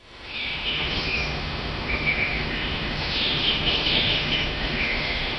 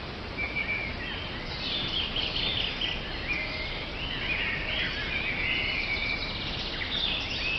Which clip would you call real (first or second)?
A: second